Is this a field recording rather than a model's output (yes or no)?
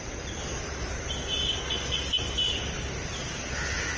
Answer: yes